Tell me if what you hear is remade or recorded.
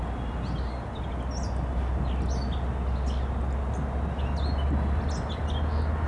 recorded